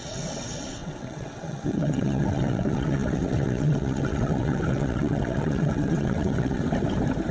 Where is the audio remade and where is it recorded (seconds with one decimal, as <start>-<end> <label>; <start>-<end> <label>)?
0.0-6.6 remade; 6.6-7.3 recorded